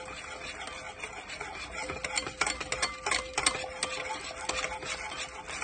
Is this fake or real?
real